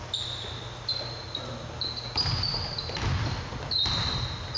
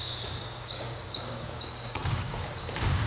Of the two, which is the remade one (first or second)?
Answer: second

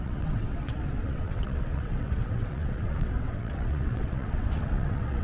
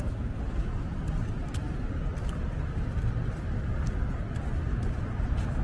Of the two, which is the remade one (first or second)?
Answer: first